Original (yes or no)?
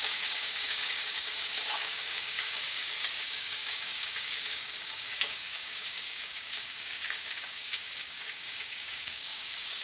no